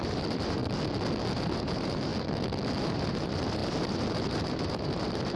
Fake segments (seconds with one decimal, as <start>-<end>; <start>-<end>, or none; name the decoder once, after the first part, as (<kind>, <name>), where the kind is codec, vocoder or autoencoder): 0.0-0.6 (vocoder, BigVGAN v2); 1.3-2.1; 2.8-5.4